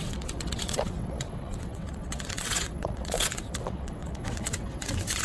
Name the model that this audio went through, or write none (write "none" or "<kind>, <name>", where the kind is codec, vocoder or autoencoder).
vocoder, WaveNeXt